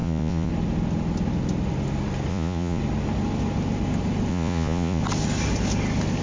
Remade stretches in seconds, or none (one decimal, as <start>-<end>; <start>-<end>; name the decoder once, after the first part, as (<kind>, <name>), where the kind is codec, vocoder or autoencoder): 0.0-0.5 (vocoder, Vocos); 2.3-2.8; 4.3-5.0